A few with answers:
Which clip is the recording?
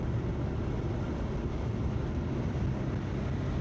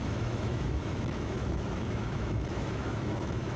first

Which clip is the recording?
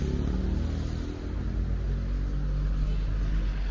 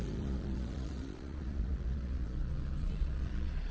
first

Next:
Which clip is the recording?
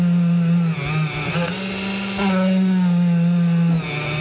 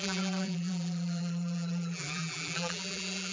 first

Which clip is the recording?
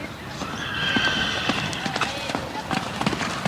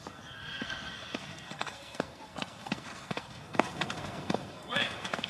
first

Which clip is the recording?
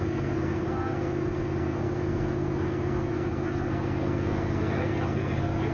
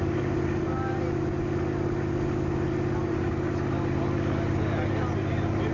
second